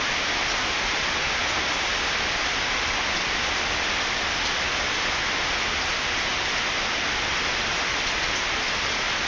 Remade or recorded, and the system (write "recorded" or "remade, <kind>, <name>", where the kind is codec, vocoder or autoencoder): recorded